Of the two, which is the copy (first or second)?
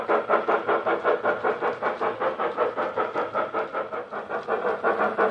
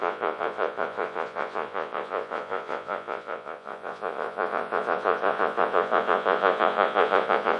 second